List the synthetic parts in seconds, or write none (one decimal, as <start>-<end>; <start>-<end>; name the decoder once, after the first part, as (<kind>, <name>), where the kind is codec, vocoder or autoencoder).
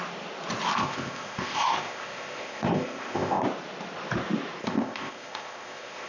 0.8-3.4 (codec, ZipCodec); 4.6-6.1